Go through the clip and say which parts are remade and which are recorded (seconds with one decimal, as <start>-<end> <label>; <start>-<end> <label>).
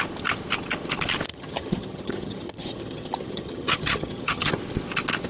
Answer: 0.0-1.3 recorded; 1.3-4.5 remade; 4.5-5.3 recorded